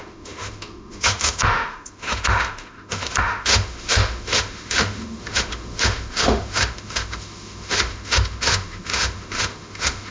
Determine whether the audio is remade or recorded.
remade